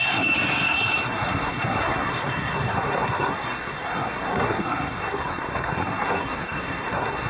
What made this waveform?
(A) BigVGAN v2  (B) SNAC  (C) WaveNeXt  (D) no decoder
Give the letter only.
B